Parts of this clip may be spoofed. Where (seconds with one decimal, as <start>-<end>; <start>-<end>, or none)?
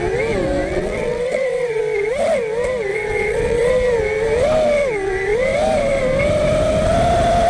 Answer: 0.7-1.8; 2.9-3.7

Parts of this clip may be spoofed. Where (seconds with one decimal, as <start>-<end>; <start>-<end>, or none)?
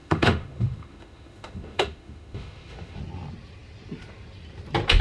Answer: 0.0-3.0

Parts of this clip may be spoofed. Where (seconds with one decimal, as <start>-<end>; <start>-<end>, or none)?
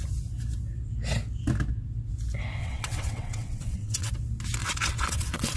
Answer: 2.6-4.1; 4.6-5.6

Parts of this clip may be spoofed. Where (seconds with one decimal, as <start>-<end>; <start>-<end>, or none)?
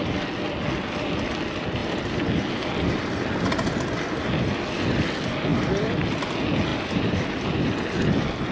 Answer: 5.5-6.3; 6.7-7.6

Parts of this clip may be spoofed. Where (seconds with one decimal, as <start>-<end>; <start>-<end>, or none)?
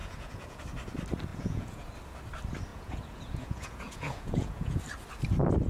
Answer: 0.0-0.6; 1.3-1.9; 2.7-4.8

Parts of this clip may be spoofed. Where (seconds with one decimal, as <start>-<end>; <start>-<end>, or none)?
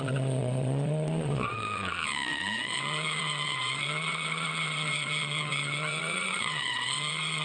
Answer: 0.0-7.4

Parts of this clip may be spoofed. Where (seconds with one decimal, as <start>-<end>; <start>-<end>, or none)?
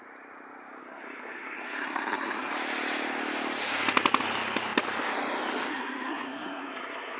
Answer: 0.8-2.5; 5.7-7.2